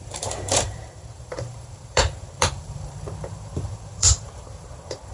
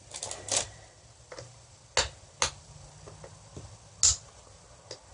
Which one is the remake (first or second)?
first